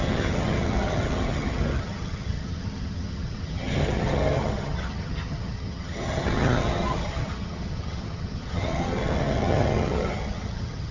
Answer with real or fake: fake